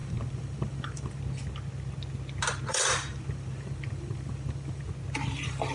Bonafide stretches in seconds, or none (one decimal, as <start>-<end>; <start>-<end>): 1.2-2.7; 4.9-5.7